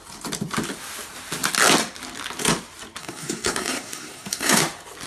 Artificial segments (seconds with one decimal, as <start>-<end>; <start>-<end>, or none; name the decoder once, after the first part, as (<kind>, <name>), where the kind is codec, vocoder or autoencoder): 3.0-4.6 (codec, SNAC)